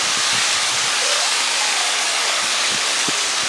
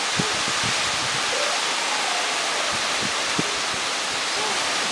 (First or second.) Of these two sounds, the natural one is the second